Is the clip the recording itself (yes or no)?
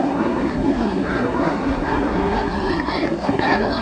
no